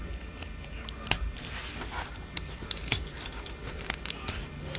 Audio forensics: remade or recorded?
recorded